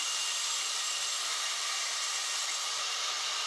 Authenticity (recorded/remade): remade